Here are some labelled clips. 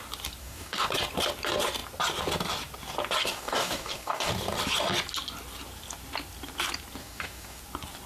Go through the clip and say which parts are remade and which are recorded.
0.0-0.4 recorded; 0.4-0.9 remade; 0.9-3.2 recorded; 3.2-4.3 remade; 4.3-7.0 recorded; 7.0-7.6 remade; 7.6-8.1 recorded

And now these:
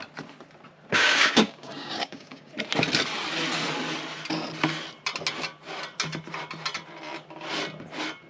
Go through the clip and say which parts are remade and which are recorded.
0.0-0.9 recorded; 0.9-2.5 remade; 2.5-8.3 recorded

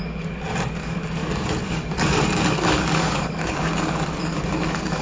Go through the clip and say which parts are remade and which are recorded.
0.0-5.0 remade

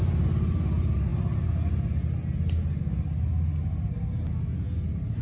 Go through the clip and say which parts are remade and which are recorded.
0.0-5.2 recorded

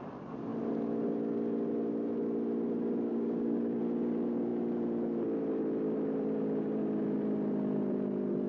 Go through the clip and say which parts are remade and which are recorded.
0.0-3.1 recorded; 3.1-3.8 remade; 3.8-8.5 recorded

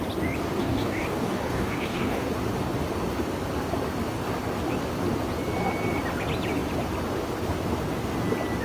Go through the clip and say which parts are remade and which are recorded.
0.0-0.6 recorded; 0.6-2.3 remade; 2.3-8.6 recorded

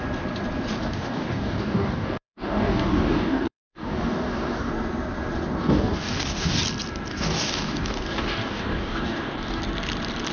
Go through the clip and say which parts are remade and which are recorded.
0.0-0.8 recorded; 0.8-4.7 remade; 4.7-5.6 recorded; 5.6-6.6 remade; 6.6-7.1 recorded; 7.1-9.6 remade; 9.6-10.3 recorded

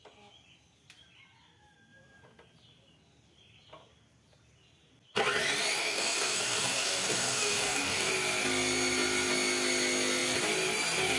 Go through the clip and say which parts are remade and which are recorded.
0.0-5.8 recorded; 5.8-8.1 remade; 8.1-11.2 recorded